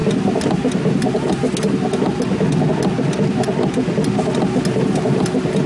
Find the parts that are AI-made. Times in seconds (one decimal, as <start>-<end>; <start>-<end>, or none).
none